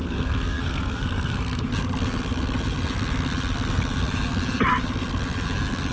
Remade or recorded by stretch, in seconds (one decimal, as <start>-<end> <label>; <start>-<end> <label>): 0.0-1.7 remade; 1.7-5.9 recorded